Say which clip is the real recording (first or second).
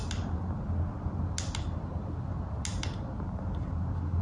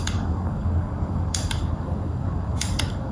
first